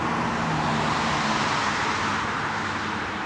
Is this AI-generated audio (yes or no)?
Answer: yes